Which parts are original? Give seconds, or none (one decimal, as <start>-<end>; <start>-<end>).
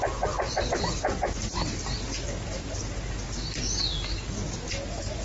0.0-5.2